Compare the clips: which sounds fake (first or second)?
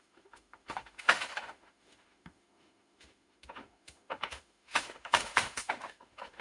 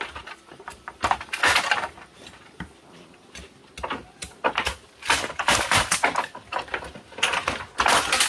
first